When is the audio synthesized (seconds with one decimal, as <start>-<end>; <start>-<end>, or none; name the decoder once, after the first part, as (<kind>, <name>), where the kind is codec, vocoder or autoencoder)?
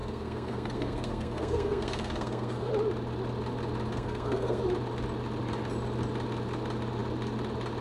0.0-2.7 (codec, SNAC); 3.9-4.6